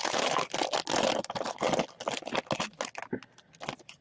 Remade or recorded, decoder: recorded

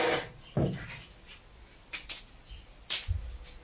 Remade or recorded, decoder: recorded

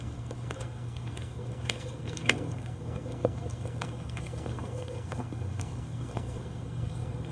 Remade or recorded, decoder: remade, codec, SNAC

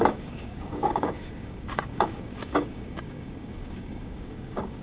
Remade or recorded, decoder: remade, codec, DAC